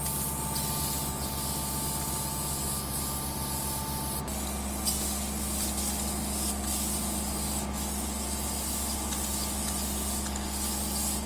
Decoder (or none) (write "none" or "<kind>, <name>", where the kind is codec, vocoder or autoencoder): none